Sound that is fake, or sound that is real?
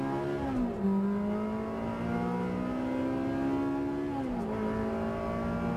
real